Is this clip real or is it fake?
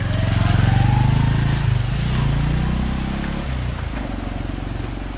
real